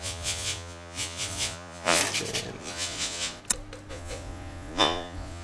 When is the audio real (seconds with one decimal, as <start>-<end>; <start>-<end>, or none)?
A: 2.0-2.6; 3.4-3.9